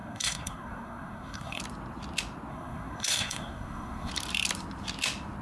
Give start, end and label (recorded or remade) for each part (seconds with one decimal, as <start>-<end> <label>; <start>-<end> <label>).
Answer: 0.0-1.6 remade; 1.6-2.5 recorded; 2.5-4.1 remade; 4.1-5.4 recorded